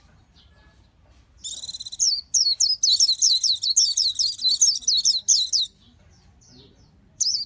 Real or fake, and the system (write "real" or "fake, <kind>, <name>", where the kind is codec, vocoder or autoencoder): real